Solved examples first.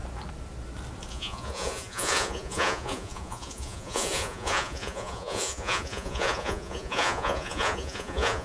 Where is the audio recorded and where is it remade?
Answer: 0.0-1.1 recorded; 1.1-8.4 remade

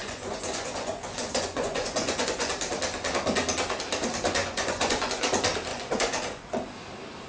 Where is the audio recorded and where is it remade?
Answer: 0.0-2.5 remade; 2.5-4.4 recorded; 4.4-5.2 remade; 5.2-5.7 recorded; 5.7-6.5 remade; 6.5-7.3 recorded

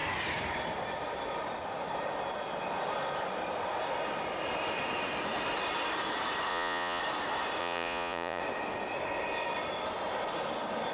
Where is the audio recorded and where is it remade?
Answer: 0.0-6.5 recorded; 6.5-7.0 remade; 7.0-7.6 recorded; 7.6-8.4 remade; 8.4-10.9 recorded